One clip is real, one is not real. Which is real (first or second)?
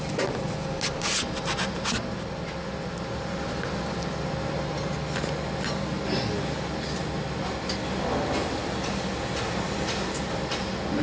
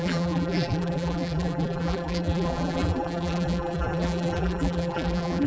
first